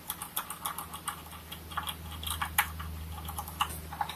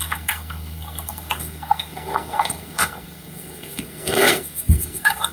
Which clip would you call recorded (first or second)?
first